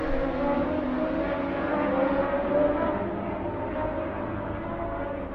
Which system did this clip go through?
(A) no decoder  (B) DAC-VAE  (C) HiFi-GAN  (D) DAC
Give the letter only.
A